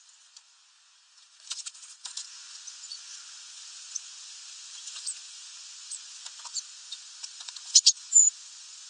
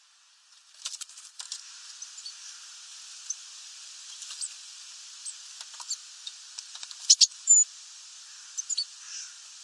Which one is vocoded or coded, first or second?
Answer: first